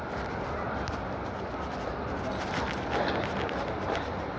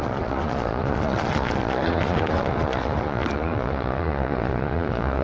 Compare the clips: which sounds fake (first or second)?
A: second